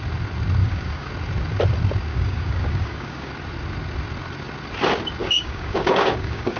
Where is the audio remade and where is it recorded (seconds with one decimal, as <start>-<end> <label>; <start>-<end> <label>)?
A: 0.0-0.6 recorded; 0.6-1.1 remade; 1.1-2.1 recorded; 2.1-3.3 remade; 3.3-5.2 recorded; 5.2-6.6 remade